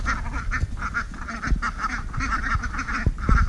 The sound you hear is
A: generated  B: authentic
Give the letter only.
B